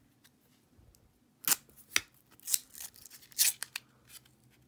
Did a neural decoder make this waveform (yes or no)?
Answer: no